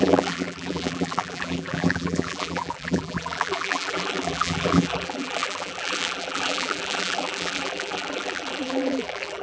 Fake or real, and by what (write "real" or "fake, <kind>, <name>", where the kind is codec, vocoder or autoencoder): fake, vocoder, BigVGAN v2